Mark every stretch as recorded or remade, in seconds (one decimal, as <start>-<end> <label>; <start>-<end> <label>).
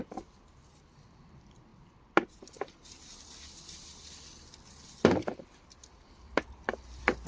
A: 0.0-1.7 remade; 1.7-4.6 recorded; 4.6-7.3 remade